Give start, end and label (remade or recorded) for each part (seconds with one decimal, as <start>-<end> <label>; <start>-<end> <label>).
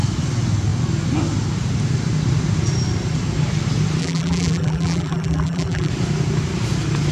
0.0-4.0 recorded; 4.0-5.9 remade; 5.9-7.1 recorded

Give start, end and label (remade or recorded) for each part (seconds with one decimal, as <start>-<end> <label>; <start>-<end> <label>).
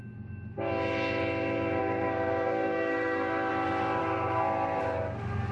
0.0-1.8 recorded; 1.8-3.5 remade; 3.5-4.0 recorded; 4.0-4.8 remade; 4.8-5.5 recorded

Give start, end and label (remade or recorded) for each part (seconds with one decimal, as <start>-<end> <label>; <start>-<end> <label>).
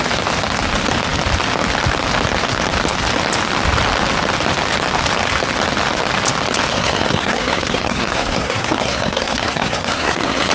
0.0-6.7 recorded; 6.7-10.5 remade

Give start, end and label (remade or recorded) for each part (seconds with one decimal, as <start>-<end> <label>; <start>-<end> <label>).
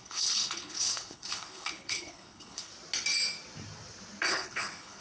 0.0-2.7 remade; 2.7-4.3 recorded; 4.3-5.0 remade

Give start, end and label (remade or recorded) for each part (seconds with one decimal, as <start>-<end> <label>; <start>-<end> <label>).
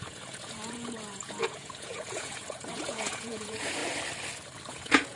0.0-3.8 remade; 3.8-4.7 recorded; 4.7-5.2 remade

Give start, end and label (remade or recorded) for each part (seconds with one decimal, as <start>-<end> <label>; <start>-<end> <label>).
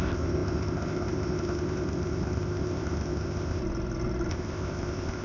0.0-3.6 remade; 3.6-4.3 recorded; 4.3-5.2 remade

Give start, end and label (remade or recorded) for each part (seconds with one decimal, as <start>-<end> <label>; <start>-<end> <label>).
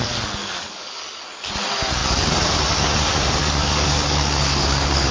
0.0-0.4 recorded; 0.4-1.0 remade; 1.0-3.4 recorded; 3.4-5.1 remade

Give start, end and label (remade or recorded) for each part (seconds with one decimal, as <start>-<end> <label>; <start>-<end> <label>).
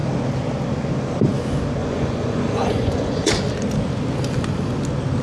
0.0-1.8 recorded; 1.8-3.3 remade; 3.3-5.2 recorded